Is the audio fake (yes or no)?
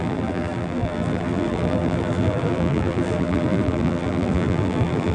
yes